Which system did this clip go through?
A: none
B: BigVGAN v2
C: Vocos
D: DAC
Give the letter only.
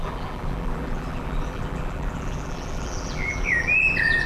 B